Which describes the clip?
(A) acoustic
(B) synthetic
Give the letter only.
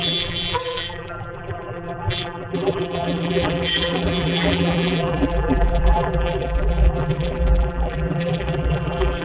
B